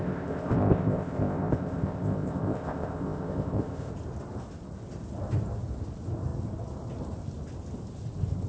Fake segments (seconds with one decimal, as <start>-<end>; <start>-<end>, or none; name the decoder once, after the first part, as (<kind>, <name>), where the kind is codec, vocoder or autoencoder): 0.0-3.9 (codec, ZipCodec)